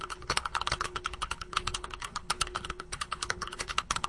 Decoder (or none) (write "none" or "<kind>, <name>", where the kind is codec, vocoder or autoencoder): codec, HILCodec